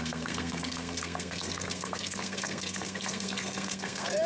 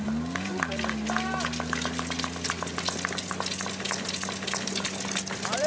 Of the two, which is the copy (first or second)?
first